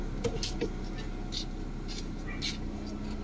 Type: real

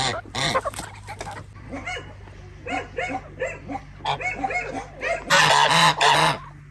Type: real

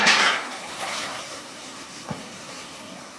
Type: fake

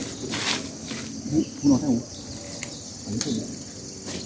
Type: real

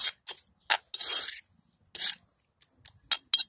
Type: real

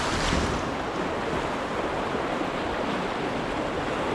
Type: real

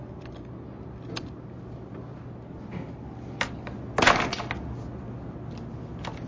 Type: real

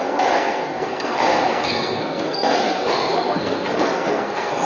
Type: fake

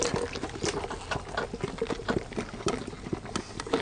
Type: real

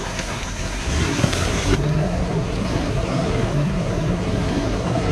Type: fake